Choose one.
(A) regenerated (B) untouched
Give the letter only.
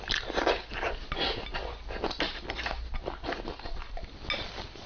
B